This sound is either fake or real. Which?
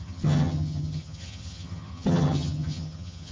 fake